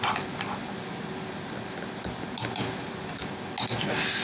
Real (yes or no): yes